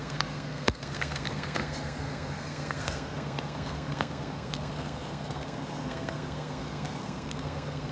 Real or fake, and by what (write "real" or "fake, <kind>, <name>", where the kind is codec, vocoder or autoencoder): fake, codec, SNAC